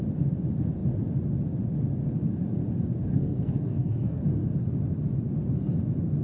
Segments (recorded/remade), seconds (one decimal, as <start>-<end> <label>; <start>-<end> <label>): 0.0-3.1 recorded; 3.1-4.2 remade; 4.2-6.2 recorded

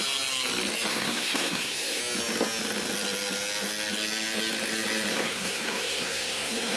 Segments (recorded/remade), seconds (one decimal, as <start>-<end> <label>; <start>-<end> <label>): 0.0-0.9 recorded; 0.9-2.0 remade; 2.0-5.1 recorded; 5.1-6.8 remade

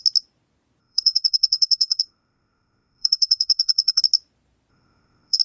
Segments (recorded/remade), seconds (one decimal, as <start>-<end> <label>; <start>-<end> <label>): 0.0-0.8 recorded; 0.8-4.0 remade; 4.0-4.7 recorded; 4.7-5.4 remade

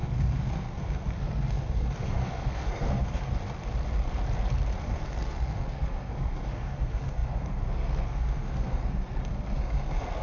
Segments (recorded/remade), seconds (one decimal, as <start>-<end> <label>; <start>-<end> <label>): 0.0-3.3 remade; 3.3-4.8 recorded; 4.8-10.2 remade

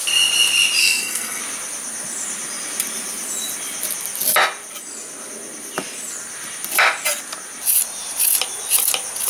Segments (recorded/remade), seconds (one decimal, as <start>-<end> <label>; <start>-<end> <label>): 0.0-0.8 recorded; 0.8-1.4 remade; 1.4-9.3 recorded

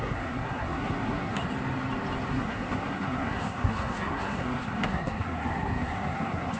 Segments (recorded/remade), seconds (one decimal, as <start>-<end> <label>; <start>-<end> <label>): 0.0-1.4 remade; 1.4-2.3 recorded; 2.3-6.6 remade